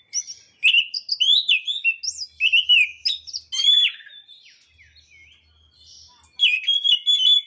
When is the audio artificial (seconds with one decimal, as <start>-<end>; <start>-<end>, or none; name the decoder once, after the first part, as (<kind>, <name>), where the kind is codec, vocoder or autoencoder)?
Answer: none